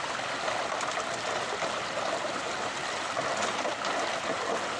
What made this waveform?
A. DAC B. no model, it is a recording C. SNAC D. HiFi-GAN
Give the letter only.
B